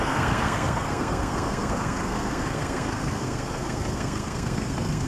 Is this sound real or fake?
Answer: fake